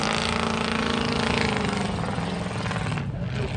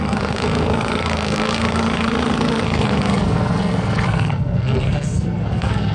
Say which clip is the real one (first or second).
first